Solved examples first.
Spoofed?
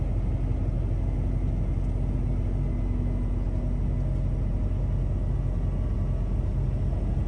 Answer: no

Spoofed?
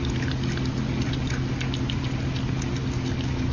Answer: no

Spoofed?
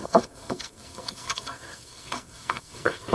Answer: yes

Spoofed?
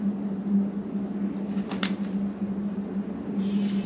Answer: no